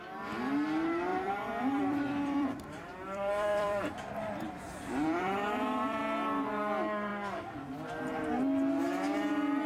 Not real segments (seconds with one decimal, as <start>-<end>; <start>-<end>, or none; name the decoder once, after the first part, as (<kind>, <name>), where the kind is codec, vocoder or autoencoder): 1.1-6.0 (vocoder, BigVGAN v2)